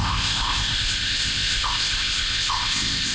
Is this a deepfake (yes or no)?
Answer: yes